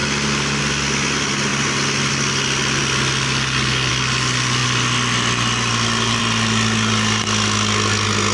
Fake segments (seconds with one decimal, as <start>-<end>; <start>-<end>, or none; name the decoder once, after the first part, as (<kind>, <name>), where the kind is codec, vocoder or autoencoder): none